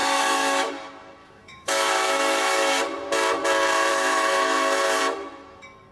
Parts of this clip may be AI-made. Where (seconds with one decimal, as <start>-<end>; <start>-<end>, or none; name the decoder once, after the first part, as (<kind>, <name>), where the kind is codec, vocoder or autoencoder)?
0.0-0.7 (autoencoder, DAC-VAE); 1.2-2.8; 3.9-5.0